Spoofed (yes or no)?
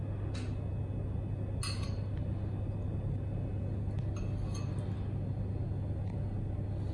no